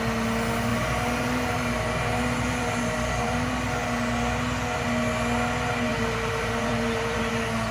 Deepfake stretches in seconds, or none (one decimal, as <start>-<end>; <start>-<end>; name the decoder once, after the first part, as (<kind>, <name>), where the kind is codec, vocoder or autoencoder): 0.7-3.5 (vocoder, BigVGAN v2); 5.9-7.3